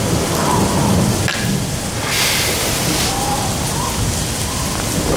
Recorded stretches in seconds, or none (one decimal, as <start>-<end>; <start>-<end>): 0.0-5.2